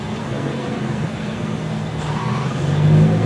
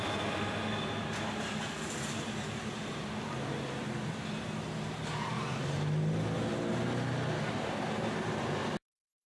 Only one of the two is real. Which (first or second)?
second